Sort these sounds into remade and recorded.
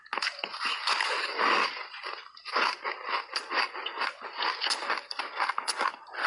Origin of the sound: recorded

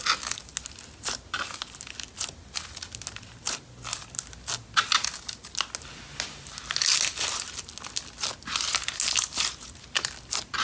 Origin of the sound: recorded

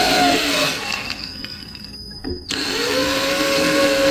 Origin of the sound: remade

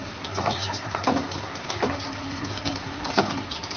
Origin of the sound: remade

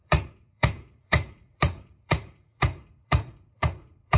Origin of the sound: remade